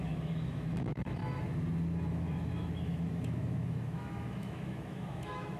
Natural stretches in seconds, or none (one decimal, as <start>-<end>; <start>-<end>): 1.2-2.1